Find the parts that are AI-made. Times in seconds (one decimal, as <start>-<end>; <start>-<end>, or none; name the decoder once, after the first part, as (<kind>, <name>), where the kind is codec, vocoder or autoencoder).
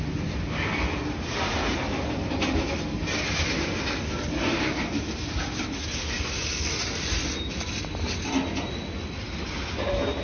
none